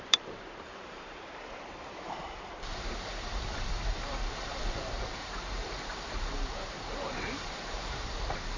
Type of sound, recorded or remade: remade